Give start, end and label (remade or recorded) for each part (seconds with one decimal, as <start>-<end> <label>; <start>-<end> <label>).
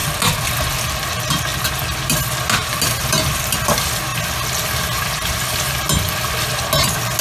0.0-7.2 recorded